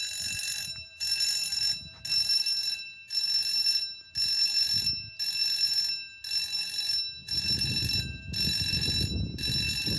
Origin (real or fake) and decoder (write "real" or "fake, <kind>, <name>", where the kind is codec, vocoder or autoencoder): real